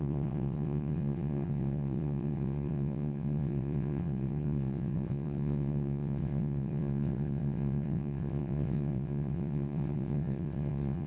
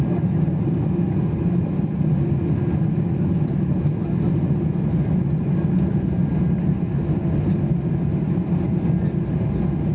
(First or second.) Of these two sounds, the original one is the second